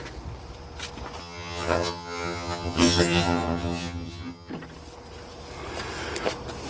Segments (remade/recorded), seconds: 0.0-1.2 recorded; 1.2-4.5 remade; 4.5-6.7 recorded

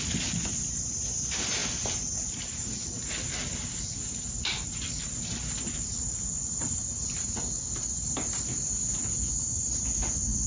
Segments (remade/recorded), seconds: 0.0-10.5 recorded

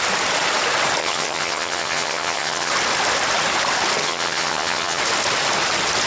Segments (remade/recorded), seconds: 0.0-1.0 recorded; 1.0-2.7 remade; 2.7-4.0 recorded; 4.0-5.0 remade; 5.0-6.1 recorded

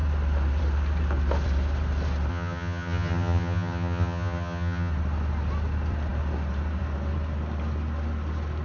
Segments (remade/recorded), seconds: 0.0-2.3 recorded; 2.3-4.9 remade; 4.9-8.6 recorded